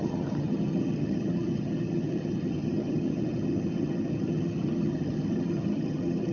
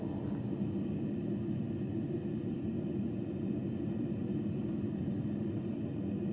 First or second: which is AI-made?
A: first